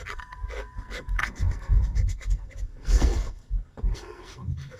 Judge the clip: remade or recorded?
remade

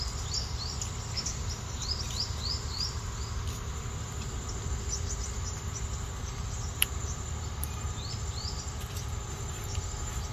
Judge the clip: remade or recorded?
remade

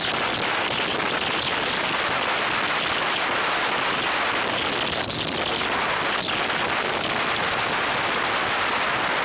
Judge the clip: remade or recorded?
recorded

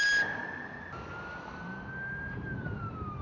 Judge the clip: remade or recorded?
recorded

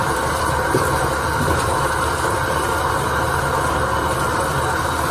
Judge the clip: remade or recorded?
remade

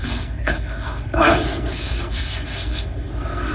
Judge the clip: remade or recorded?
remade